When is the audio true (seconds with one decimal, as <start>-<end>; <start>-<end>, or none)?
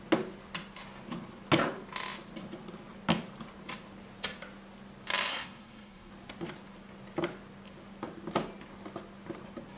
0.0-5.3; 6.1-9.8